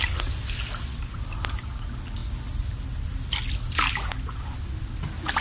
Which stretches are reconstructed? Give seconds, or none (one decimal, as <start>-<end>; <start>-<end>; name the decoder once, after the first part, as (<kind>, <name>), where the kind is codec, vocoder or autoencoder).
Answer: none